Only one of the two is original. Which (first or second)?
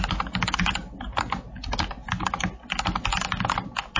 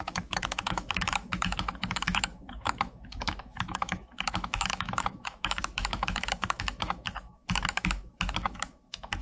first